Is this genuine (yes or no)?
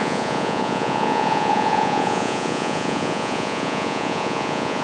no